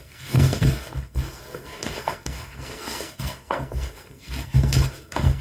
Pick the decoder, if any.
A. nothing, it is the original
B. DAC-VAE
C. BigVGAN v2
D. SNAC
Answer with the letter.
D